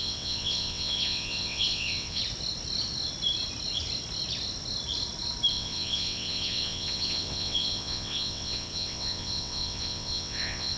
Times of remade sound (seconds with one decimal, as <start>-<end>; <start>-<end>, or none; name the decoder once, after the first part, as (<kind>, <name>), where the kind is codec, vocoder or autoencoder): 0.0-2.2 (vocoder, WaveNeXt); 5.5-10.8